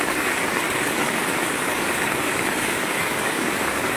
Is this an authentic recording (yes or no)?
no